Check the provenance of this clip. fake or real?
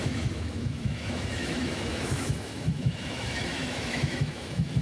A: fake